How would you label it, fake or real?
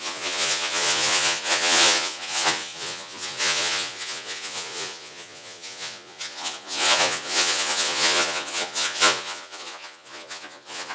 fake